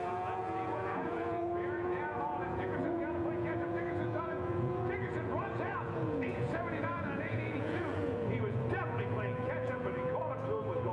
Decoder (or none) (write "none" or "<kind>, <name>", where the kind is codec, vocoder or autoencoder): vocoder, Vocos